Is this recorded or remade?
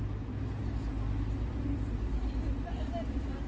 recorded